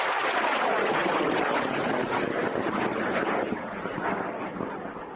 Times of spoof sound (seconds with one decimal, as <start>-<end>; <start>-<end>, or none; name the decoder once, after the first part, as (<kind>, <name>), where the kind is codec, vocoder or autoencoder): none